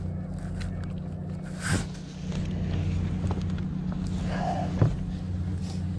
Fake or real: real